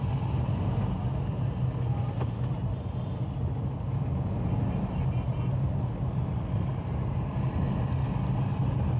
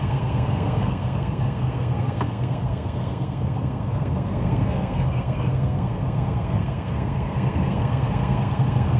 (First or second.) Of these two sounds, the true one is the first